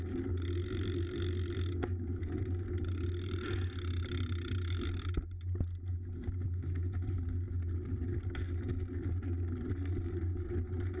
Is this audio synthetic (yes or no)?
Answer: no